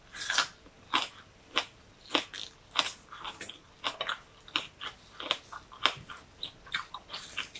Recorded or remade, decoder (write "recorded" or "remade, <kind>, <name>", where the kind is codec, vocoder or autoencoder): recorded